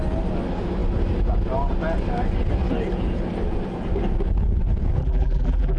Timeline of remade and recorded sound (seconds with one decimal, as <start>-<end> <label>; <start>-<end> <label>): 0.0-5.0 recorded; 5.0-5.8 remade